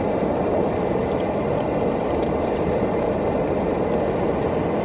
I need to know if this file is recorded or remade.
recorded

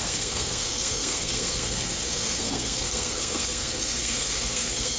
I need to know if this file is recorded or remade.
remade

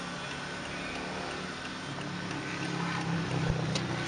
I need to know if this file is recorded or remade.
recorded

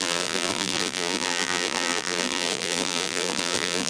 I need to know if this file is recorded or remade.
remade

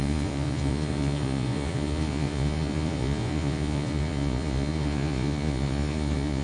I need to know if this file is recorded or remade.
remade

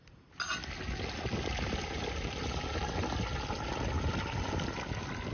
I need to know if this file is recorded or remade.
recorded